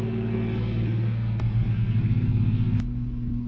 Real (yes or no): no